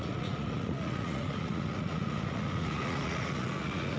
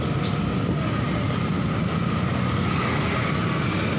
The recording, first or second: second